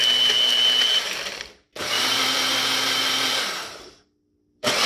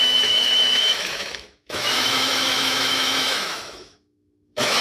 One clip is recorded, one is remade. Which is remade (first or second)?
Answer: second